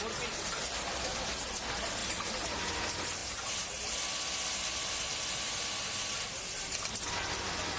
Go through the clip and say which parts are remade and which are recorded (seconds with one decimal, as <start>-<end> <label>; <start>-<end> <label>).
0.0-7.8 recorded